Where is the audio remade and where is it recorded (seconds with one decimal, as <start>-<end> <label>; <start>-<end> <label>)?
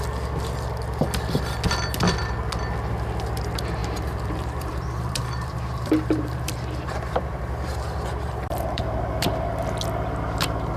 0.0-3.8 recorded; 3.8-8.8 remade; 8.8-10.8 recorded